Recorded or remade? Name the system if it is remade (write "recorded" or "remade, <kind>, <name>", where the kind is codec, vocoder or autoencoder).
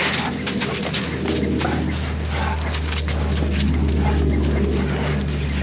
recorded